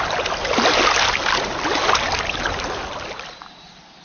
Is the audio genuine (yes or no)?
yes